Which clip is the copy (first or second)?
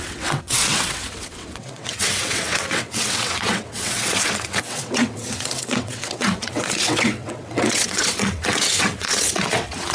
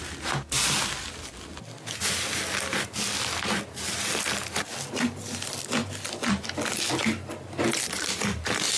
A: first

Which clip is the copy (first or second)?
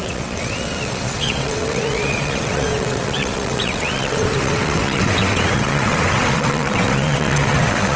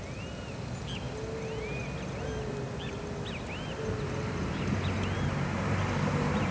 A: first